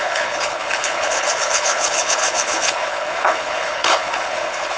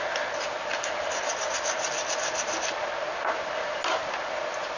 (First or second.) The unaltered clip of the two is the second